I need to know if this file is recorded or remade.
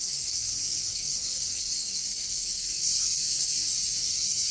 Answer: remade